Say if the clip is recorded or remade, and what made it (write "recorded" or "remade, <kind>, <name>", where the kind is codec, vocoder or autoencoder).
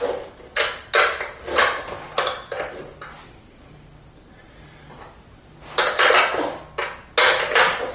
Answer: recorded